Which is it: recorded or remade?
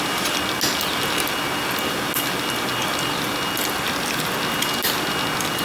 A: recorded